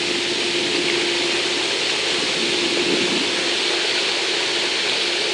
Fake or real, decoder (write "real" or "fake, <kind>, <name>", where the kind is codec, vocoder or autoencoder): real